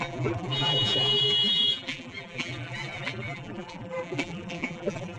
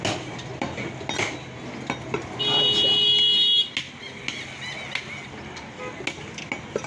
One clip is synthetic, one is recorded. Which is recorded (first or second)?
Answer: second